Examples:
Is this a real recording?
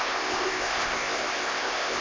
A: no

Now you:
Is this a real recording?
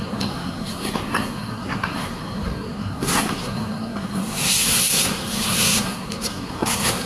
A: no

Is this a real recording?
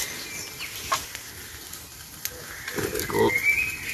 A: yes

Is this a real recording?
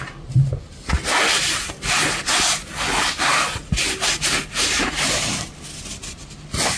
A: yes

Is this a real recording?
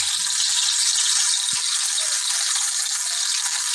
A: yes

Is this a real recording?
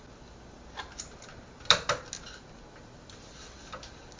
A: yes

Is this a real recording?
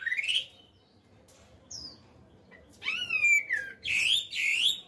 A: no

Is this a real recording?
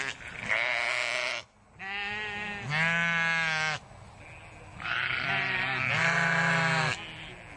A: yes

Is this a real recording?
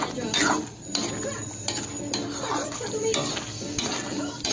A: yes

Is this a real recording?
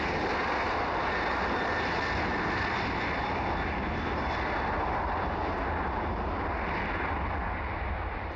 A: yes